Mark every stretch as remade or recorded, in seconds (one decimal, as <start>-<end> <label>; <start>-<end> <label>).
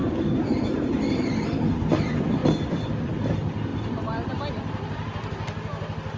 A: 0.0-6.2 recorded